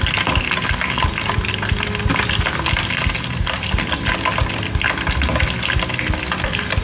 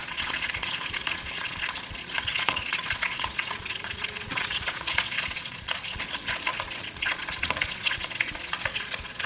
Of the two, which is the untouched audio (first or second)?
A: first